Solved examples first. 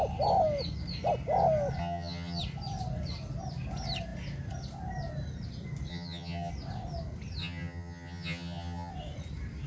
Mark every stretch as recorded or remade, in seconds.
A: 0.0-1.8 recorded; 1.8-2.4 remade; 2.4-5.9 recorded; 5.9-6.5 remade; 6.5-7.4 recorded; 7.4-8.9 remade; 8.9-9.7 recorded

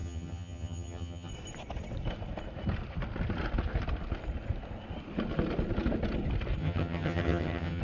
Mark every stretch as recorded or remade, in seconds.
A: 0.0-1.3 remade; 1.3-6.6 recorded; 6.6-7.8 remade

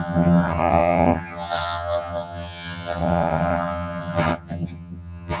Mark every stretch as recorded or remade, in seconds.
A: 0.0-5.4 remade

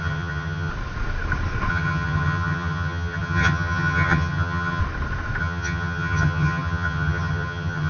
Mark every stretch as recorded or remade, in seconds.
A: 0.0-0.7 remade; 0.7-1.7 recorded; 1.7-4.8 remade; 4.8-5.4 recorded; 5.4-7.9 remade

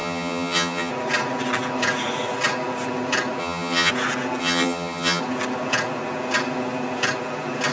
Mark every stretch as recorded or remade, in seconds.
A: 0.0-0.9 remade; 0.9-3.4 recorded; 3.4-3.9 remade; 3.9-4.4 recorded; 4.4-5.2 remade; 5.2-7.7 recorded

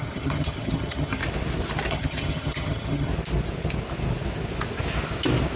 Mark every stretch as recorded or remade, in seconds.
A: 0.0-1.2 remade; 1.2-1.9 recorded; 1.9-3.1 remade; 3.1-5.6 recorded